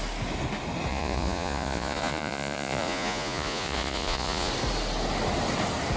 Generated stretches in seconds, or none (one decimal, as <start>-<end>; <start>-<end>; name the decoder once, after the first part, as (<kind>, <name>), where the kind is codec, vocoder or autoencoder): 0.9-4.5 (vocoder, Vocos)